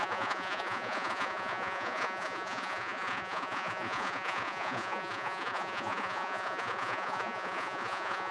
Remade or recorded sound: remade